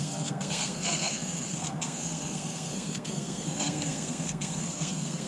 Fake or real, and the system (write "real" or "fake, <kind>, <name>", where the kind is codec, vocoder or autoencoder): fake, codec, SNAC